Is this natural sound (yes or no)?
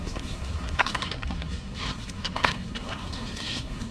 no